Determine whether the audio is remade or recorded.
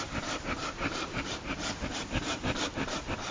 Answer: remade